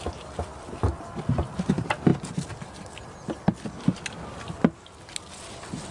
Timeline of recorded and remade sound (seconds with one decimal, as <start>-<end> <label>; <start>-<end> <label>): 0.0-5.9 recorded